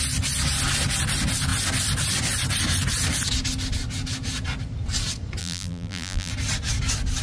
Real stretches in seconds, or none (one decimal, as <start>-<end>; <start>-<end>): 0.0-5.4; 6.3-7.2